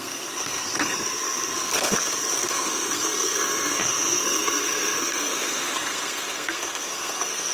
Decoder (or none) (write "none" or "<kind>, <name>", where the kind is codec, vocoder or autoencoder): codec, SNAC